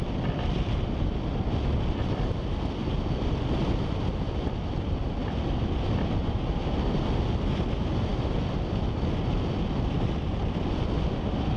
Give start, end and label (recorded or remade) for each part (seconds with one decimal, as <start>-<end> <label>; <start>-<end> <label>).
0.0-11.6 recorded